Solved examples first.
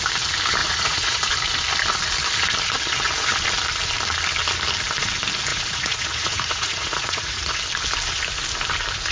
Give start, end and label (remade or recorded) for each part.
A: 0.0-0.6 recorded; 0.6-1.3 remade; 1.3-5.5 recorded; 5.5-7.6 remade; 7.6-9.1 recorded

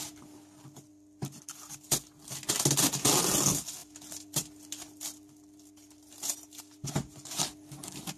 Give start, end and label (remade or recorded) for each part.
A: 0.0-0.9 recorded; 0.9-2.5 remade; 2.5-3.8 recorded; 3.8-6.6 remade; 6.6-8.2 recorded

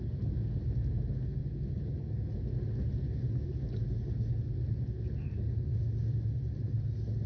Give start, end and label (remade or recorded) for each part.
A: 0.0-7.3 recorded

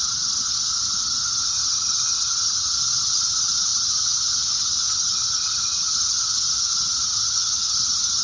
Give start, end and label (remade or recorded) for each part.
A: 0.0-8.2 remade

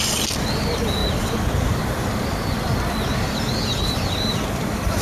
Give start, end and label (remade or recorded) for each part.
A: 0.0-1.0 remade; 1.0-3.1 recorded; 3.1-5.0 remade

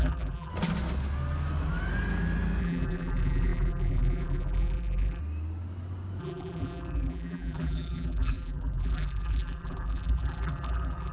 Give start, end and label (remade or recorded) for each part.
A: 0.0-0.5 remade; 0.5-2.6 recorded; 2.6-5.2 remade; 5.2-6.2 recorded; 6.2-11.1 remade

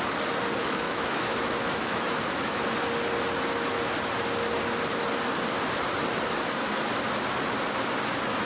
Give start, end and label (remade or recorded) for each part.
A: 0.0-0.6 recorded; 0.6-2.6 remade; 2.6-8.5 recorded

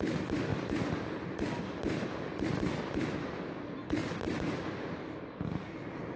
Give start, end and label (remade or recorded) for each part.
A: 0.0-6.2 recorded